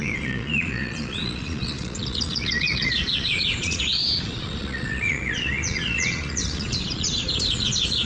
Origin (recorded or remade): remade